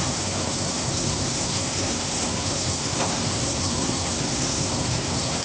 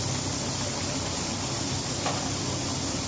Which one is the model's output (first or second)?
first